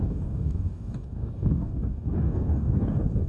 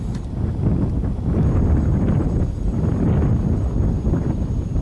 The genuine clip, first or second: second